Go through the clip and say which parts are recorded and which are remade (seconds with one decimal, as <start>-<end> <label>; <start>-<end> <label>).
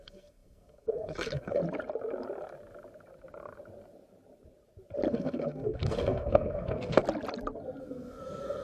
0.0-1.6 remade; 1.6-5.1 recorded; 5.1-7.0 remade; 7.0-7.8 recorded; 7.8-8.6 remade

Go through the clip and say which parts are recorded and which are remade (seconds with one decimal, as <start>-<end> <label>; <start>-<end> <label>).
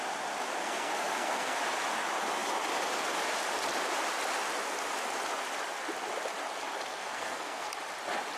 0.0-0.6 recorded; 0.6-1.6 remade; 1.6-6.9 recorded; 6.9-7.7 remade; 7.7-8.4 recorded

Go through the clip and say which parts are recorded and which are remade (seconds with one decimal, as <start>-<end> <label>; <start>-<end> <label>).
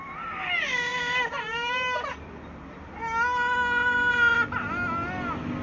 0.0-5.6 recorded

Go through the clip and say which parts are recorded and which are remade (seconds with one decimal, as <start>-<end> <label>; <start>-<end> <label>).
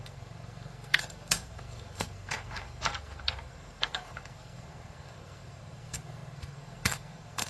0.0-7.5 remade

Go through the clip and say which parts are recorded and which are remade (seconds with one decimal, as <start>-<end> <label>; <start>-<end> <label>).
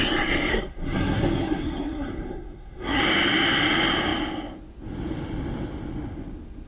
0.0-0.5 recorded; 0.5-3.0 remade; 3.0-6.7 recorded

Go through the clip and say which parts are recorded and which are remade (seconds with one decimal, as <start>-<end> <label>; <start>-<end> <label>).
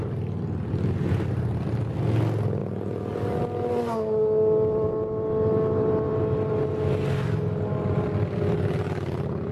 0.0-9.5 recorded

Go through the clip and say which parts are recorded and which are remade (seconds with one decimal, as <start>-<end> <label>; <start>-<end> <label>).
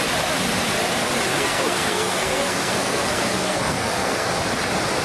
0.0-1.3 recorded; 1.3-4.3 remade; 4.3-5.0 recorded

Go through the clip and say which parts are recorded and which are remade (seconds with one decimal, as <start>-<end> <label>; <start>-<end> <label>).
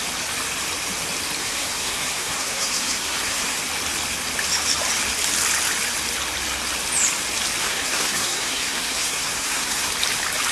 0.0-1.4 recorded; 1.4-3.6 remade; 3.6-7.6 recorded; 7.6-9.9 remade; 9.9-10.5 recorded